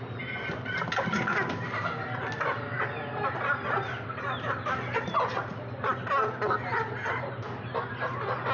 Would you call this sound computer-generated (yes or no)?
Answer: no